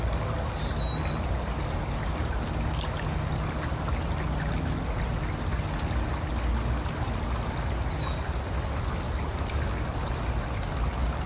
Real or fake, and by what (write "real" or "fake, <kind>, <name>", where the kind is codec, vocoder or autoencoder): real